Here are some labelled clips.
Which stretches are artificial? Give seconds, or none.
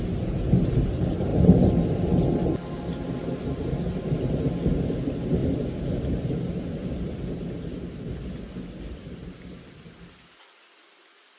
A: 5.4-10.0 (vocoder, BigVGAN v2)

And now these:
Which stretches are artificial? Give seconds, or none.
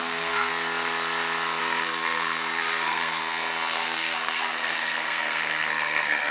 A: 0.0-0.5 (codec, SNAC); 1.6-3.2; 3.7-6.3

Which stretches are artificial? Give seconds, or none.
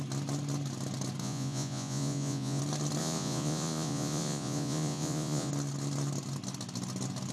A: 1.2-2.6 (vocoder, Vocos); 3.0-5.5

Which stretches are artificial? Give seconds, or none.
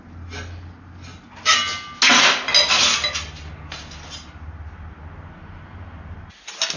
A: none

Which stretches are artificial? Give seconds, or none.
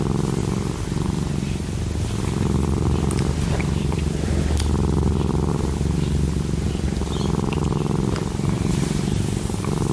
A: 0.0-9.9 (vocoder, BigVGAN v2)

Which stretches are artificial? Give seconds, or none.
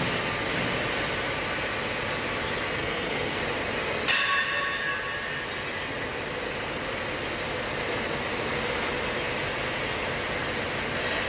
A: 2.8-3.4 (codec, SNAC)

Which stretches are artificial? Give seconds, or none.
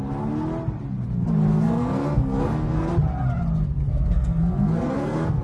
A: 1.5-2.9 (codec, SNAC); 3.9-5.4